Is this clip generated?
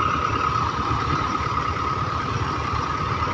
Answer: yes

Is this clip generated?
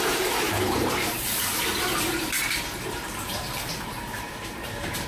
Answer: yes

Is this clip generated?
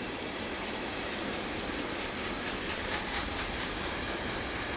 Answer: yes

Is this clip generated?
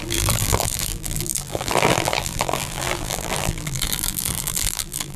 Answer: yes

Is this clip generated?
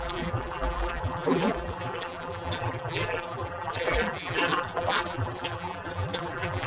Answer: yes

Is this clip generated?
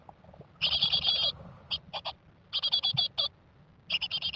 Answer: no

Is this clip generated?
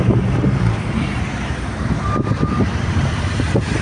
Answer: yes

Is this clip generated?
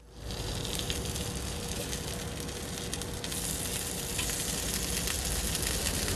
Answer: no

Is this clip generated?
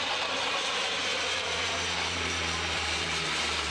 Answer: yes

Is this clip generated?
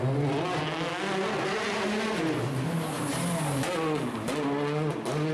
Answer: no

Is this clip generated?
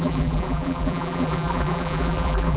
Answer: yes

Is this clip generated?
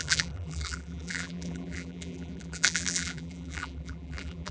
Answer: yes